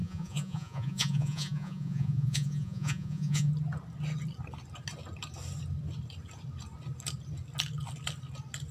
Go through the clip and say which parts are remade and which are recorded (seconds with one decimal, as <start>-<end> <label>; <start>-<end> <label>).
0.0-3.5 remade; 3.5-8.7 recorded

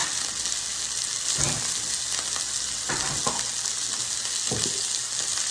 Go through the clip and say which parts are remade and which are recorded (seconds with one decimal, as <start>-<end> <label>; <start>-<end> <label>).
0.0-5.5 recorded